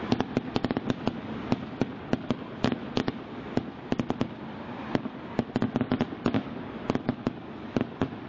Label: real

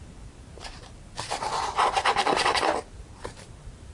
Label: fake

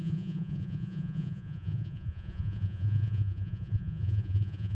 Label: fake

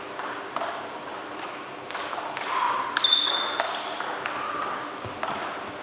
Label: real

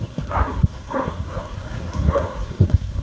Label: fake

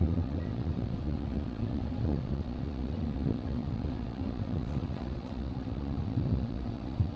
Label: fake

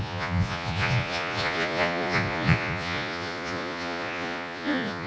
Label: fake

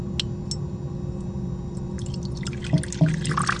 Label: real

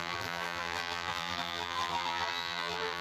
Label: fake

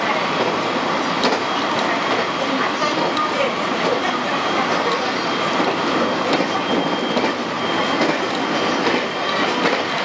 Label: real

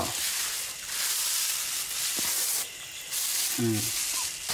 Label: real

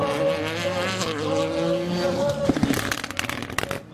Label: real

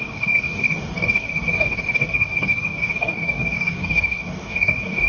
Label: fake